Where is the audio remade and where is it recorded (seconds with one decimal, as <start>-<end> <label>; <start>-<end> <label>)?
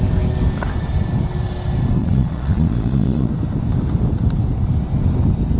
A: 0.0-2.0 recorded; 2.0-3.3 remade; 3.3-5.6 recorded